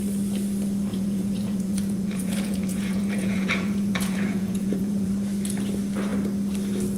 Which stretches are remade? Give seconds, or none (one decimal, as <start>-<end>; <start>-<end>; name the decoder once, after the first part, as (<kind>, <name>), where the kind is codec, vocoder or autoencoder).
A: 0.9-5.1 (vocoder, Vocos)